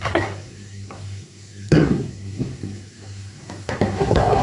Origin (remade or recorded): remade